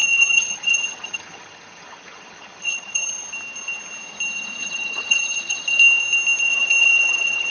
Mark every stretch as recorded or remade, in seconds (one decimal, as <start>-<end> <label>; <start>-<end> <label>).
0.0-3.3 remade; 3.3-4.6 recorded; 4.6-5.6 remade; 5.6-6.5 recorded; 6.5-7.5 remade